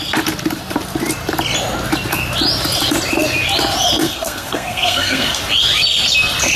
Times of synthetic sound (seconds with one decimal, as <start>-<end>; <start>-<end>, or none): 4.0-5.4